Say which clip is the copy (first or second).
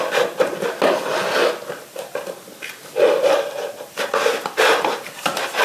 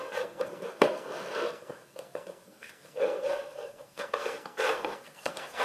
second